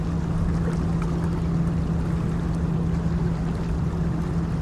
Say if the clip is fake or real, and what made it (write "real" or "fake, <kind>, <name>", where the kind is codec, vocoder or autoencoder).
real